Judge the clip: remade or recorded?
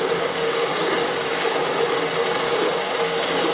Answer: remade